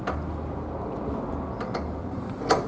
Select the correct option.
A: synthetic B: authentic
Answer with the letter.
B